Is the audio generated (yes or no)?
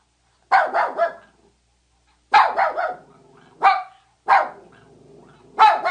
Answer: no